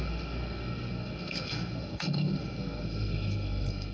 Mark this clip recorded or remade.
remade